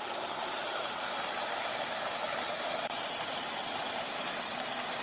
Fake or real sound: real